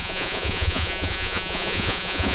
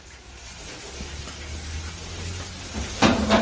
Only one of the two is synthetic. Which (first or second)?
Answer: first